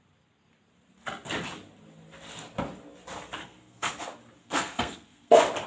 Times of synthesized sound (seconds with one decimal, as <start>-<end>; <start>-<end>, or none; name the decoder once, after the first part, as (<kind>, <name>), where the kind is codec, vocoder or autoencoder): 3.4-3.9 (codec, SNAC); 4.4-5.3